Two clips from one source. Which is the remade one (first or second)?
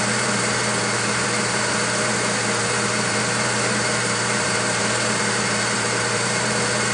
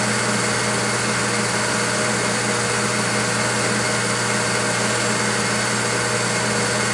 first